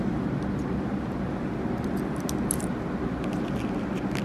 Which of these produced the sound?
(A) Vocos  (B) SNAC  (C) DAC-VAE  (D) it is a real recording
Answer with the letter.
D